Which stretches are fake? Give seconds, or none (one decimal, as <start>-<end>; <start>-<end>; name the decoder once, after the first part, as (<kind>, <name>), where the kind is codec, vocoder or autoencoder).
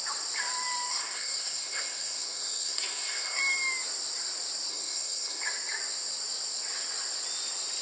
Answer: 0.9-3.4 (codec, SNAC); 4.7-5.4